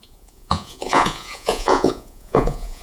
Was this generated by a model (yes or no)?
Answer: yes